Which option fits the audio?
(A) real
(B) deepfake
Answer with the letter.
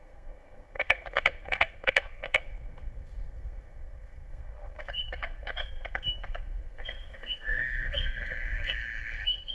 B